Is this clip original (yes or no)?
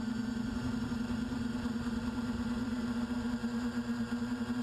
no